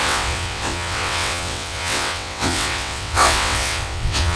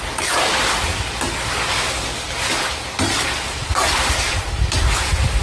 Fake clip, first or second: first